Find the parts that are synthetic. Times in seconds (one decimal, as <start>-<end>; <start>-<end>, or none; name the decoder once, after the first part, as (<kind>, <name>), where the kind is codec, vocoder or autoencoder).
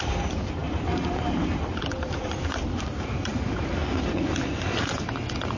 0.0-3.8 (vocoder, BigVGAN v2)